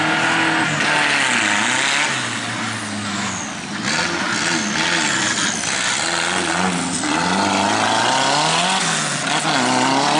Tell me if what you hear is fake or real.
real